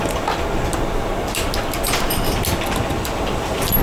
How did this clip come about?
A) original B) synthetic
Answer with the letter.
A